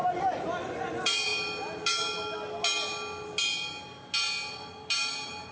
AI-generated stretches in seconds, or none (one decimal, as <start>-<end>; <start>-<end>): none